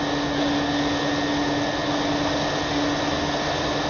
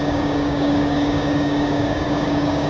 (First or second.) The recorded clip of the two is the first